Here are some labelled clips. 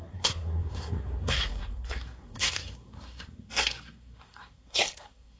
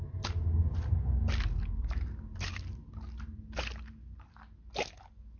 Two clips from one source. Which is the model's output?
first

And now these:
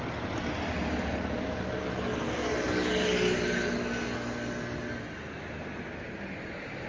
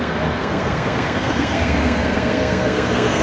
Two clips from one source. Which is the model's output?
second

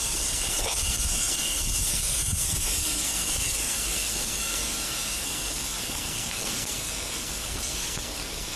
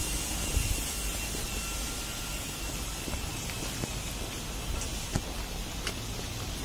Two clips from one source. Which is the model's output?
first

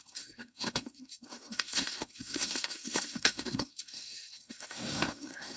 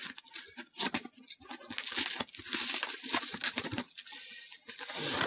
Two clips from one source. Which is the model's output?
first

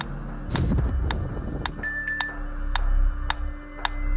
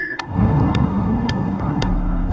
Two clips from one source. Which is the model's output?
second